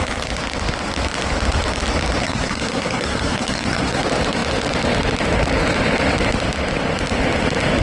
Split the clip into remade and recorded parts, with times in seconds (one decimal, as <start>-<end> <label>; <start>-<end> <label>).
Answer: 0.0-2.2 recorded; 2.2-4.0 remade; 4.0-7.8 recorded